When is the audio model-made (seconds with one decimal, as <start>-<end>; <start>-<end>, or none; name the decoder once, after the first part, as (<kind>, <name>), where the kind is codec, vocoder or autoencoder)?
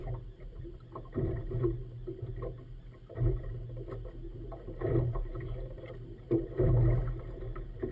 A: none